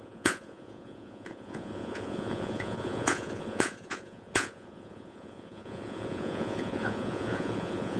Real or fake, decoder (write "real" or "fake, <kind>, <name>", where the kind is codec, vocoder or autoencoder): fake, vocoder, Vocos